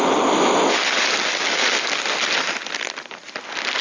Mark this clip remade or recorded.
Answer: recorded